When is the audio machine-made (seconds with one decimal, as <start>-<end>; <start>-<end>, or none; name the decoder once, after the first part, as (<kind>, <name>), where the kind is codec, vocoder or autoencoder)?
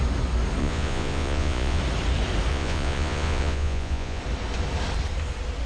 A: 0.6-1.8 (vocoder, Vocos); 2.5-4.2